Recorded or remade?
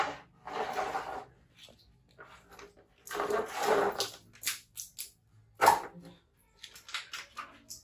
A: recorded